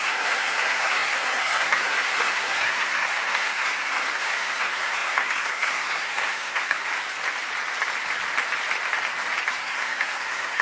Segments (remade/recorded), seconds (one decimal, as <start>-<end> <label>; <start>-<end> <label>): 0.0-6.9 remade; 6.9-9.5 recorded; 9.5-10.6 remade